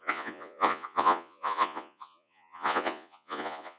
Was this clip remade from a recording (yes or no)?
yes